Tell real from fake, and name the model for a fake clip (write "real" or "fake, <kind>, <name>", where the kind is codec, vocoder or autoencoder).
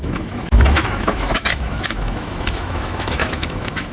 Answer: fake, autoencoder, DAC-VAE